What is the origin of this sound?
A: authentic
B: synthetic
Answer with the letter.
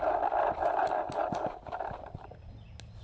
A